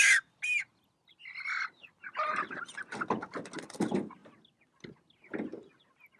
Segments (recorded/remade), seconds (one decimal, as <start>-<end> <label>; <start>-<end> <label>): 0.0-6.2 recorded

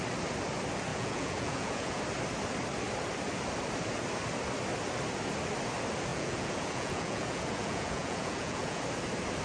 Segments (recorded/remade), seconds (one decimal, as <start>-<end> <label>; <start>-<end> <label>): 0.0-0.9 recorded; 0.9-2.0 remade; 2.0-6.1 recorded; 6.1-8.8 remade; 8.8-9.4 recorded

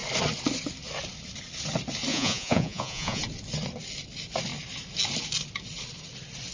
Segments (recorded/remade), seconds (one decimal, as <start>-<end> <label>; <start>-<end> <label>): 0.0-2.1 recorded; 2.1-3.2 remade; 3.2-6.5 recorded

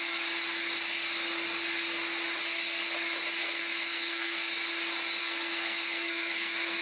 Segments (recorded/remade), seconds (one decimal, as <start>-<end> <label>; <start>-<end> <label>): 0.0-3.4 recorded; 3.4-4.5 remade; 4.5-5.2 recorded; 5.2-6.8 remade